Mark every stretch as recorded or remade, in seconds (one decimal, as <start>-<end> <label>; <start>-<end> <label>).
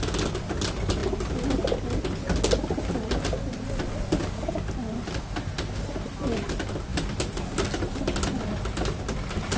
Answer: 0.0-9.6 recorded